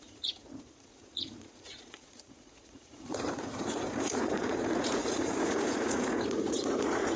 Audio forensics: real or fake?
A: fake